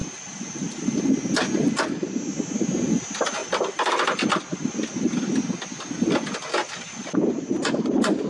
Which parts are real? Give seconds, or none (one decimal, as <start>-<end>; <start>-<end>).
0.0-8.3